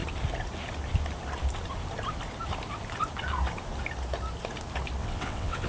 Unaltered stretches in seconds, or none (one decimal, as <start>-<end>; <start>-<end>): 0.0-5.0